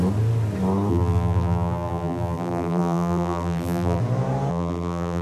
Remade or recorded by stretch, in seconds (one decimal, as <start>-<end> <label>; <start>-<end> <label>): 0.0-0.9 recorded; 0.9-4.0 remade; 4.0-4.5 recorded; 4.5-5.2 remade